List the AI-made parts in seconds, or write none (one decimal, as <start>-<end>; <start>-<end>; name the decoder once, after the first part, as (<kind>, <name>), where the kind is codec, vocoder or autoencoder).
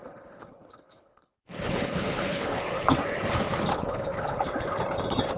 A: 0.0-2.6 (codec, HILCodec); 3.7-4.4